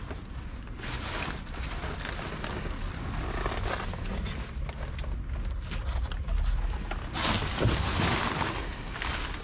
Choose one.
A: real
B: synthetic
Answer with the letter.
A